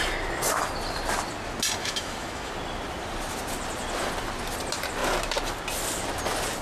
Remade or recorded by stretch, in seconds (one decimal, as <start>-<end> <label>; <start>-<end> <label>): 0.0-1.8 recorded; 1.8-2.5 remade; 2.5-6.6 recorded